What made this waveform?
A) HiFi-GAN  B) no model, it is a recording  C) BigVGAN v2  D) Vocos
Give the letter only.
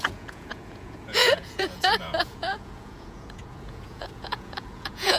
D